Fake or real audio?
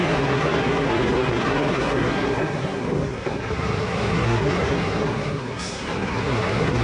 fake